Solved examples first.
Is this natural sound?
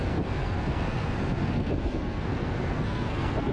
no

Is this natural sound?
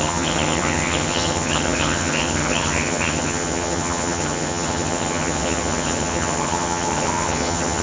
no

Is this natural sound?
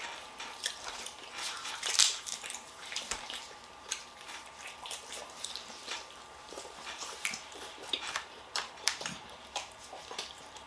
no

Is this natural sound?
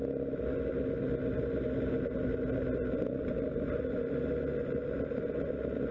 yes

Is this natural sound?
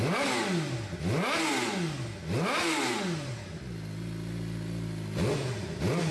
yes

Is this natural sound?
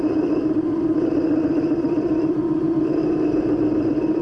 no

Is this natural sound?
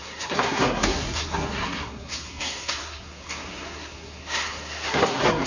no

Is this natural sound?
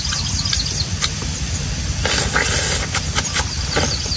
yes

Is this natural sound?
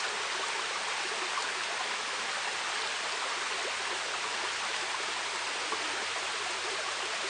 yes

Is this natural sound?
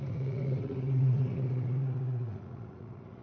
no